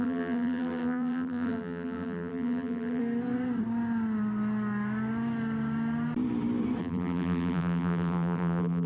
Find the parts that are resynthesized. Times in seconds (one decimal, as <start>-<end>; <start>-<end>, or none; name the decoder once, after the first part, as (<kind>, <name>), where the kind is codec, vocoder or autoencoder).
0.0-3.0 (vocoder, BigVGAN v2); 6.8-8.9